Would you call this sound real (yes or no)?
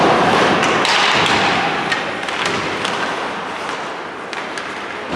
yes